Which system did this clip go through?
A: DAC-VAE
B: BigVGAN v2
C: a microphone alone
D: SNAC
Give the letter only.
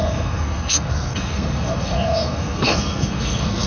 D